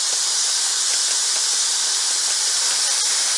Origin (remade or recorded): recorded